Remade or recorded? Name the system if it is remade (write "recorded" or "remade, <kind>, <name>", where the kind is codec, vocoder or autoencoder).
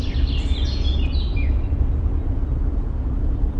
recorded